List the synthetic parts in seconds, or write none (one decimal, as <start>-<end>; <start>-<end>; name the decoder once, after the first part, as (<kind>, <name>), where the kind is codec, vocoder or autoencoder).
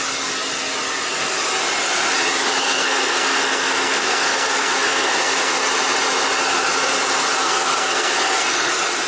2.6-5.6 (codec, SNAC); 7.4-8.7